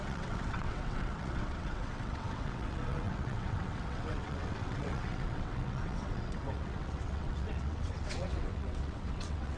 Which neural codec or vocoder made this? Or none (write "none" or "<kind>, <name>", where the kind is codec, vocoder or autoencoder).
vocoder, WaveNeXt